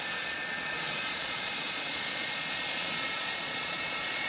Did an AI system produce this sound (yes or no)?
yes